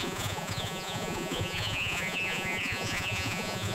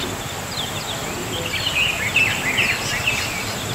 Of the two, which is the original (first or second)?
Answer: second